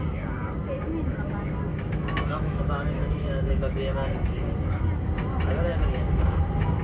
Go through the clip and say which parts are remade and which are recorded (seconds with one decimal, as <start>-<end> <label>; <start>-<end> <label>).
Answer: 0.0-1.7 recorded; 1.7-3.8 remade; 3.8-6.8 recorded

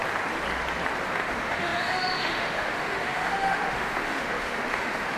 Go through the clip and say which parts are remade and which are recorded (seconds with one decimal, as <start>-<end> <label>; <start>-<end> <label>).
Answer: 0.0-1.1 recorded; 1.1-5.2 remade